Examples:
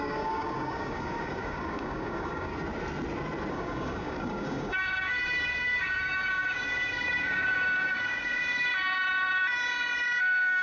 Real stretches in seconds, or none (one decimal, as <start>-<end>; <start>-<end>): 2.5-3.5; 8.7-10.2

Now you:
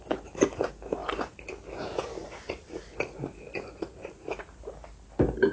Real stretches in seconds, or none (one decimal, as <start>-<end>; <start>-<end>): 0.0-5.5

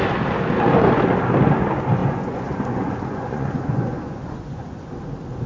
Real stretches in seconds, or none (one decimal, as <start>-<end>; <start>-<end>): 0.0-2.0; 4.9-5.5

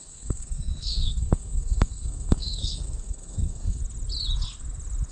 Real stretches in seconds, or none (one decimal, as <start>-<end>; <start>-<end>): 3.8-5.1